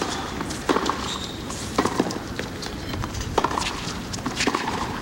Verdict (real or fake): fake